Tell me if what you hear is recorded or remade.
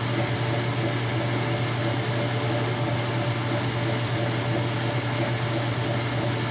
recorded